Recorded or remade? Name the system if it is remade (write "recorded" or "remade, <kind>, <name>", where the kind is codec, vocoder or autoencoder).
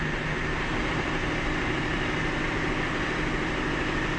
remade, vocoder, BigVGAN v2